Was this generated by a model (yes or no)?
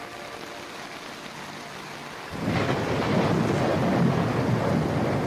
no